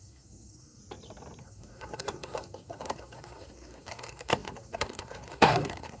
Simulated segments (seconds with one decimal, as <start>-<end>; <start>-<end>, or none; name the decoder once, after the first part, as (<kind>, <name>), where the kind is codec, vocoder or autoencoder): 0.0-0.8 (codec, SNAC); 1.4-6.0